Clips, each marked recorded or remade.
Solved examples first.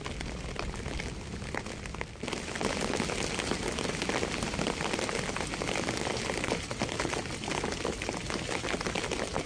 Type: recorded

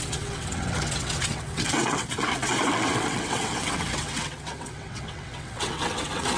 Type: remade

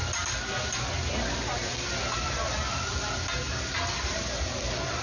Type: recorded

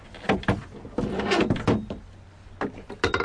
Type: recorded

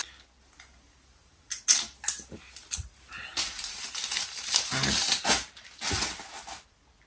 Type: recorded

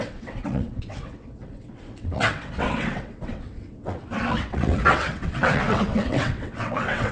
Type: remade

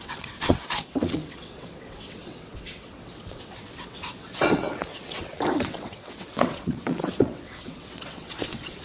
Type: remade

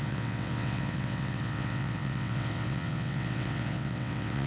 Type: remade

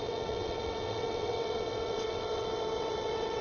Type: remade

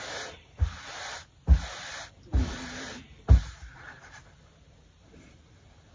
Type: recorded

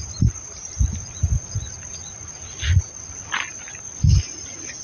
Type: recorded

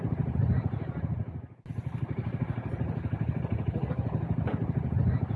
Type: recorded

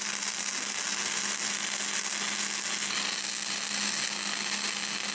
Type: recorded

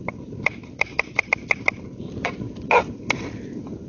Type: recorded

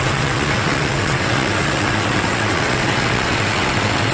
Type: remade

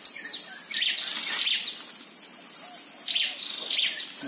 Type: recorded